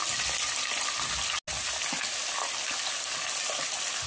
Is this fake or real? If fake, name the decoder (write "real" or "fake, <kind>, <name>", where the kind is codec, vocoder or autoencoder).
real